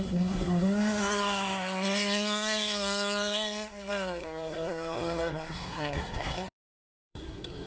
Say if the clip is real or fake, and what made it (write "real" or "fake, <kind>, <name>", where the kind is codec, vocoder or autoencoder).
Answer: fake, codec, SNAC